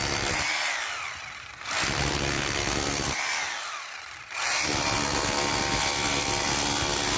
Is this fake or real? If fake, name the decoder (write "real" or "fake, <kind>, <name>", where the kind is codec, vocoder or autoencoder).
real